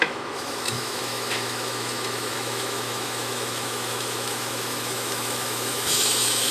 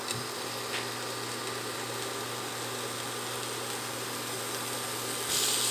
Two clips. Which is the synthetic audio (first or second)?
first